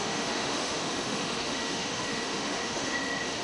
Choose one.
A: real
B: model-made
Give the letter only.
B